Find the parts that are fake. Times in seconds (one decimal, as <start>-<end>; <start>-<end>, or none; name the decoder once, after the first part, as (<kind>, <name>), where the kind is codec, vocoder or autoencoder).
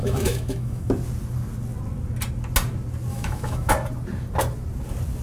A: 0.0-0.9 (autoencoder, DAC-VAE); 3.1-3.7